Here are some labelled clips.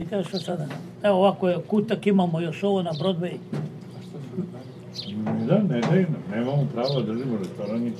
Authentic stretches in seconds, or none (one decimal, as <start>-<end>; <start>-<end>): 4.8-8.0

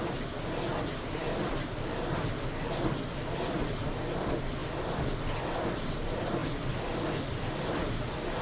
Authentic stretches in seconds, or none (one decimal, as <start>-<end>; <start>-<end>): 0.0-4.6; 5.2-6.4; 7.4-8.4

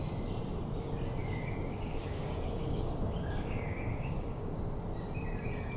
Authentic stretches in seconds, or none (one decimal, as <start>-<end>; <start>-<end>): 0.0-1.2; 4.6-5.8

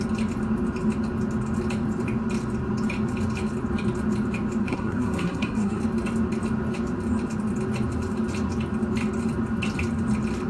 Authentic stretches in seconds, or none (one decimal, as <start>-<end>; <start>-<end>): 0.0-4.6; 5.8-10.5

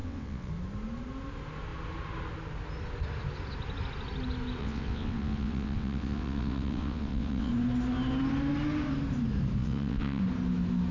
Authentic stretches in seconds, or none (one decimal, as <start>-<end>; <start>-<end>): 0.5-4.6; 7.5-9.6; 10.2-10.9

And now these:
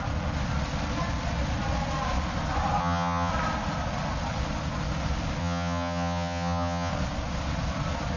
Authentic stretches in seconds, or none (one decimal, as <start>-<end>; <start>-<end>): 0.0-2.8; 3.3-5.4; 6.9-8.2

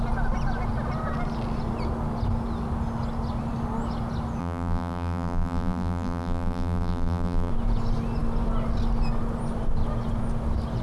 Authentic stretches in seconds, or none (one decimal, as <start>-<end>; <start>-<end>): 0.0-4.4; 7.5-10.8